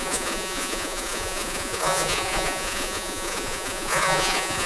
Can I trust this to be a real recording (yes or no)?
no